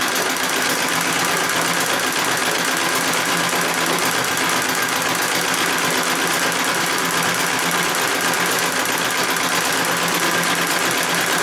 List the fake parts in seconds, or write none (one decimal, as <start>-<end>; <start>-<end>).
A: none